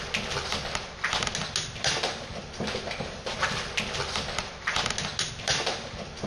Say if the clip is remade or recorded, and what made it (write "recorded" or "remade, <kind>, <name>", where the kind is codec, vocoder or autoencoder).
recorded